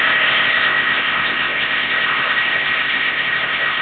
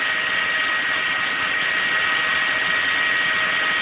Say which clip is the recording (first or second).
second